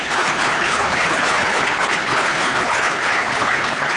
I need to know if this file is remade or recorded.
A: remade